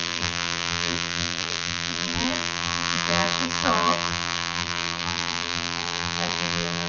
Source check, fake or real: fake